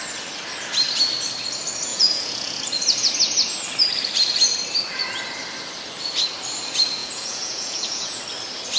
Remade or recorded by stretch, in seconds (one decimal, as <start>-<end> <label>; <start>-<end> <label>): 0.0-1.9 recorded; 1.9-2.6 remade; 2.6-7.0 recorded; 7.0-8.2 remade; 8.2-8.8 recorded